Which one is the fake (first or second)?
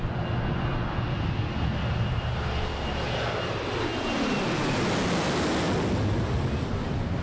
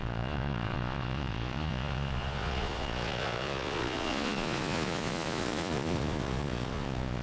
second